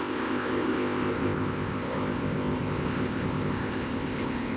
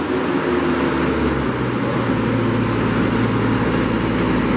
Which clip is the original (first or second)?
second